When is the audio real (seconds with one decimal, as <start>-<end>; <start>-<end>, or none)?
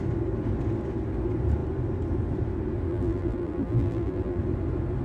0.0-2.9; 4.4-5.0